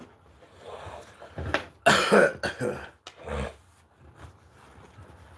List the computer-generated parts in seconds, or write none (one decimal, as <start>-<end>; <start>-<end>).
none